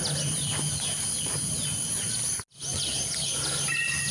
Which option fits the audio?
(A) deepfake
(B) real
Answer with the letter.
B